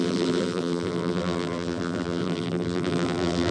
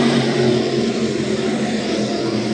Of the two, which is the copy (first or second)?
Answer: first